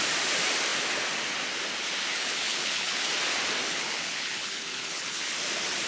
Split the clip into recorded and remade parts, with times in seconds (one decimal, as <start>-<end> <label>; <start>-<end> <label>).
0.0-2.1 recorded; 2.1-3.1 remade; 3.1-3.7 recorded; 3.7-5.3 remade; 5.3-5.9 recorded